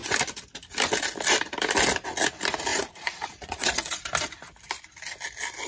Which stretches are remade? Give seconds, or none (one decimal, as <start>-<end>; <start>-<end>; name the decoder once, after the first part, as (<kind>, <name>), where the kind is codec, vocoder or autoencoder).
2.7-4.0 (vocoder, Vocos)